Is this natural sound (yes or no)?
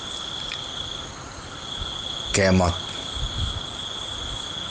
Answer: yes